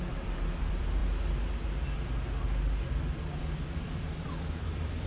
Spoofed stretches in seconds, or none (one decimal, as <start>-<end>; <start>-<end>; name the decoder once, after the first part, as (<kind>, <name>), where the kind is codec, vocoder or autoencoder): 0.0-1.0 (vocoder, BigVGAN v2); 3.0-5.1